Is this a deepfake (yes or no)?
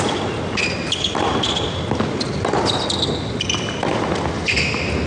no